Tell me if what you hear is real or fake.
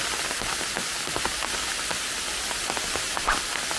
real